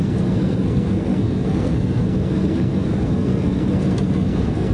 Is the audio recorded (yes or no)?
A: no